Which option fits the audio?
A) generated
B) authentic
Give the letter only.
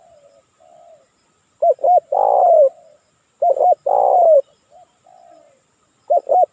B